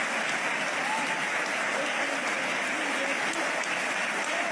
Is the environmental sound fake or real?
real